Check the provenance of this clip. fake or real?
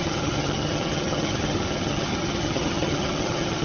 fake